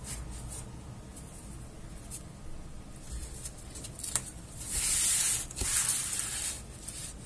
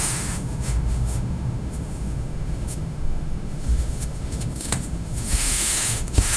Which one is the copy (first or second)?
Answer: second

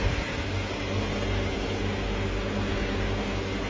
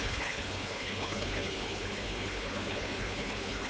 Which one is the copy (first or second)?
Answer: second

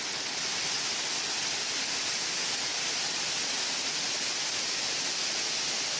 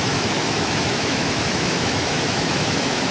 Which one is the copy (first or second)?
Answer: second